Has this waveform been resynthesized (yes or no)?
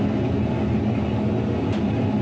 no